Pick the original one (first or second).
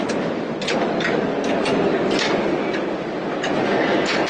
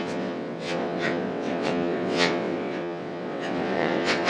first